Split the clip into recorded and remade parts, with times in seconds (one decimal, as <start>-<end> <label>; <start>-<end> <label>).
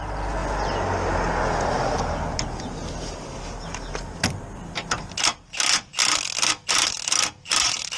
0.0-8.0 recorded